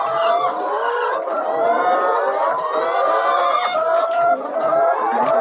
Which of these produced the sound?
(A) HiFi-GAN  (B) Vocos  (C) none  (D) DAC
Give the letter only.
C